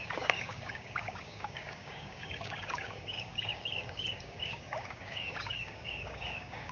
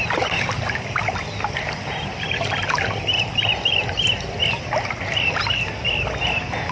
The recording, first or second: second